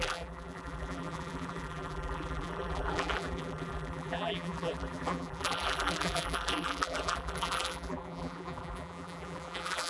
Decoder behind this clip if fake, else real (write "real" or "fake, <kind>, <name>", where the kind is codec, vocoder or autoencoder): fake, vocoder, BigVGAN v2